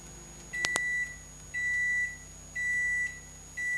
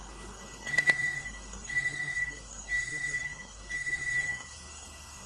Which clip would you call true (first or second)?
first